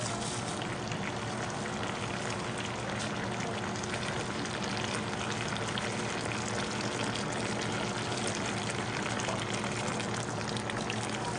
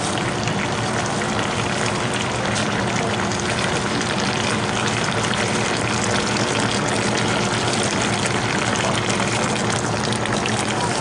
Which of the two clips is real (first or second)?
first